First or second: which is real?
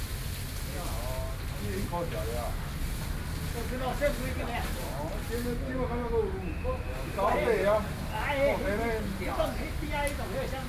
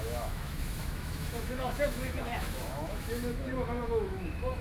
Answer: first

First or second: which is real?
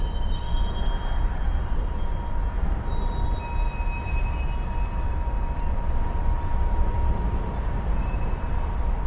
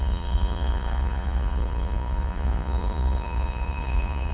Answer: first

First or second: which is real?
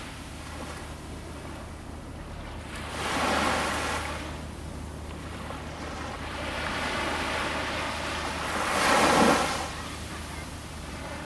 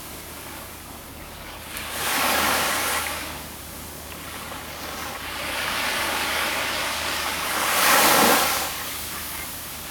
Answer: first